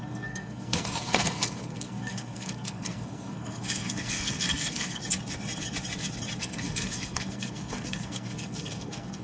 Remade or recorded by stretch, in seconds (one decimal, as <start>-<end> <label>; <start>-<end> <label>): 0.0-5.0 remade; 5.0-6.4 recorded; 6.4-9.2 remade